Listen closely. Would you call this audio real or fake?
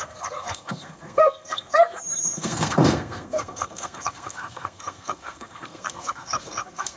fake